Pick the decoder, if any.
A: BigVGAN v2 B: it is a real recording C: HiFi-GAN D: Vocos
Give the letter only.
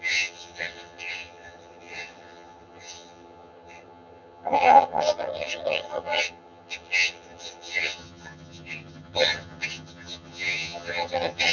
C